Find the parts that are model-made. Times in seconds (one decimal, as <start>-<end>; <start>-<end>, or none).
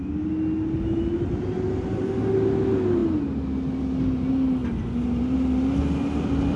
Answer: none